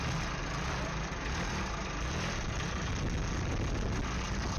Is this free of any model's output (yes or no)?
yes